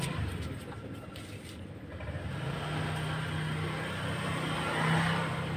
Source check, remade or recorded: recorded